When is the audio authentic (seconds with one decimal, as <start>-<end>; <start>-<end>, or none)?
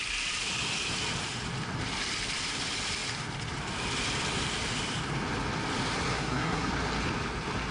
0.0-6.1; 6.7-7.7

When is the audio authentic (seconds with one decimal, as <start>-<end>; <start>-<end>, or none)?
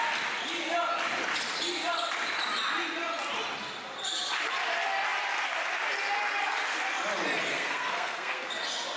0.0-7.5; 8.4-9.0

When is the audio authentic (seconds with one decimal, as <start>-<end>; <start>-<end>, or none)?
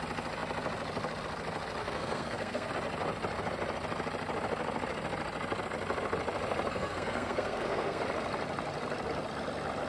0.0-1.8; 2.7-6.7; 8.0-9.9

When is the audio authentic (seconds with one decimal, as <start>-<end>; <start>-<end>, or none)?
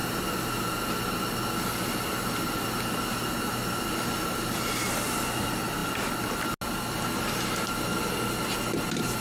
0.0-9.2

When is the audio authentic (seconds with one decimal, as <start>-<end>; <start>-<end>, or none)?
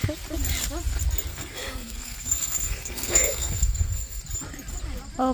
0.0-1.3; 4.2-5.3